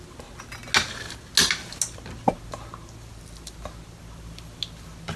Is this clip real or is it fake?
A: real